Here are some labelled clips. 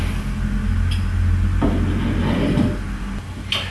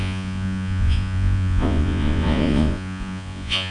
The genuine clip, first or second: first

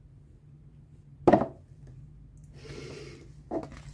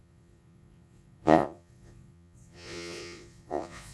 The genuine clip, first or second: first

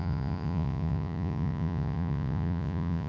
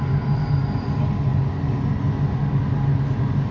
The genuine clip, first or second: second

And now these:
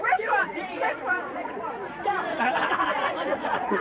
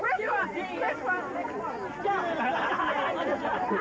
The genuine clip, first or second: second